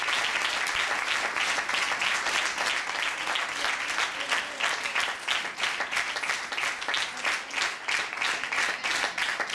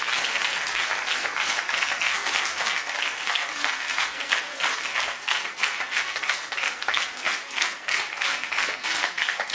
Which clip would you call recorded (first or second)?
first